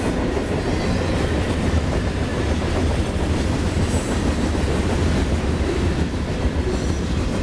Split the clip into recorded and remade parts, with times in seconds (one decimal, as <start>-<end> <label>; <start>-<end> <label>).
0.0-7.4 recorded